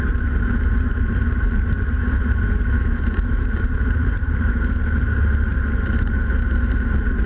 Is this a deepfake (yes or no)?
yes